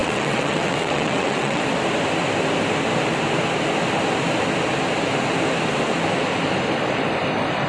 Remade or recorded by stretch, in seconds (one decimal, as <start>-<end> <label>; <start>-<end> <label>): 0.0-1.6 remade; 1.6-7.7 recorded